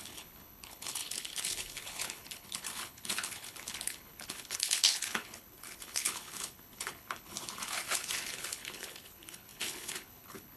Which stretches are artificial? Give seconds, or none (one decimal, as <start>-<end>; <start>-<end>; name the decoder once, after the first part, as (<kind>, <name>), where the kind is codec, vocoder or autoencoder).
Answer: 0.0-10.6 (codec, HILCodec)